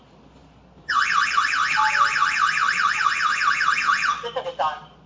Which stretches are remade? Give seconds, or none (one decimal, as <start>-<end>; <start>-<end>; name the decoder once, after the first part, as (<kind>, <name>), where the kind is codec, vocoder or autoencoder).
none